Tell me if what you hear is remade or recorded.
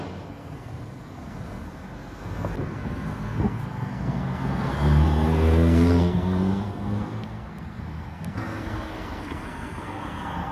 remade